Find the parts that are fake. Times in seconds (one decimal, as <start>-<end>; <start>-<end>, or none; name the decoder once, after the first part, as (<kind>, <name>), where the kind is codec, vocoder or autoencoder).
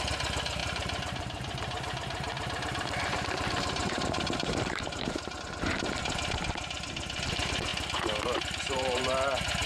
0.6-5.4 (vocoder, BigVGAN v2); 7.7-9.7